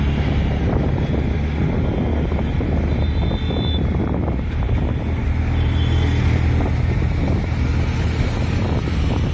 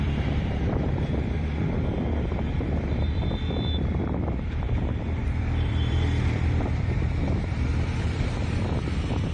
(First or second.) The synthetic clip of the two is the second